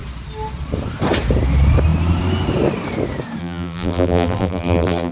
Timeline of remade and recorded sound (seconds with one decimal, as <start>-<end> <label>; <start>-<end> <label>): 0.0-3.4 recorded; 3.4-5.1 remade